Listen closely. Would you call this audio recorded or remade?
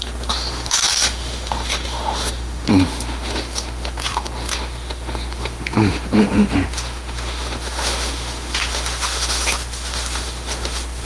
remade